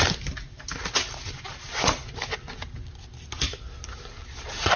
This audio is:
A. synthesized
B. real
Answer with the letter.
B